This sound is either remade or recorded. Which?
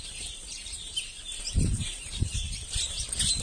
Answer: remade